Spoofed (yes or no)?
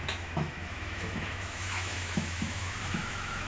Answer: yes